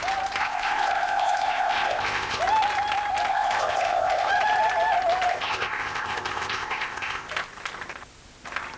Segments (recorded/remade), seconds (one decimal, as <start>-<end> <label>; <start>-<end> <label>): 0.0-0.4 recorded; 0.4-2.4 remade; 2.4-3.3 recorded; 3.3-4.3 remade; 4.3-5.3 recorded; 5.3-7.3 remade; 7.3-8.8 recorded

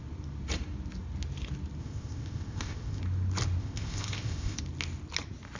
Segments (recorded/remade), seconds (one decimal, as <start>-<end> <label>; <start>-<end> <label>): 0.0-1.8 recorded; 1.8-3.0 remade; 3.0-3.6 recorded; 3.6-4.6 remade; 4.6-5.6 recorded

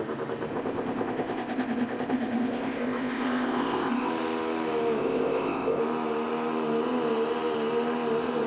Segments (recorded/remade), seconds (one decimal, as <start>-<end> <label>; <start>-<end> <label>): 0.0-0.5 recorded; 0.5-4.1 remade; 4.1-5.0 recorded; 5.0-5.8 remade; 5.8-8.5 recorded

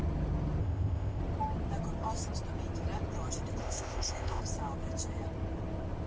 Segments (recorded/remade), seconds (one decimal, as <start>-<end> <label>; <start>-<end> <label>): 0.0-0.6 recorded; 0.6-1.2 remade; 1.2-3.6 recorded; 3.6-4.4 remade; 4.4-6.1 recorded

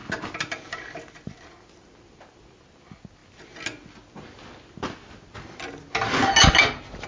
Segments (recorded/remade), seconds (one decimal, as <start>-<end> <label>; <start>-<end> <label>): 0.0-7.1 recorded

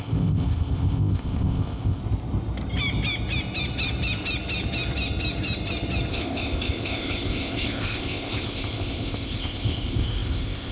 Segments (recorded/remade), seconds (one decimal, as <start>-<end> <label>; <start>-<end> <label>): 0.0-2.0 remade; 2.0-6.1 recorded; 6.1-10.7 remade

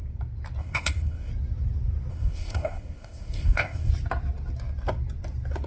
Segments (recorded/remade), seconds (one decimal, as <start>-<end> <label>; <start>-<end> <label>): 0.0-0.6 recorded; 0.6-1.3 remade; 1.3-2.1 recorded; 2.1-3.9 remade; 3.9-5.7 recorded